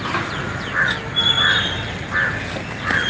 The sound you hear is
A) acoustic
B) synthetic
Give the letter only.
A